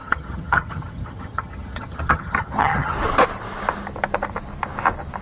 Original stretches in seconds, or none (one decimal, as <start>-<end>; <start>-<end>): 2.9-5.2